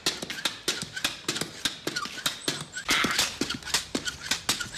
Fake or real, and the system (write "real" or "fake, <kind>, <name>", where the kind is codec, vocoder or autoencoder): real